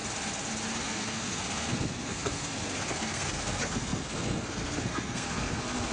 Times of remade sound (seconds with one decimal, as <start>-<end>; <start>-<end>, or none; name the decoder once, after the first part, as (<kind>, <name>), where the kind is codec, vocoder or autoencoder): 0.8-5.9 (codec, SNAC)